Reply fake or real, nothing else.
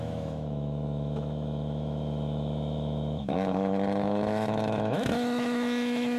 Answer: fake